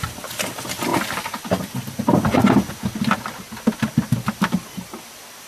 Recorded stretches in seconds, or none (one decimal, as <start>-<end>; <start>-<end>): 0.0-5.5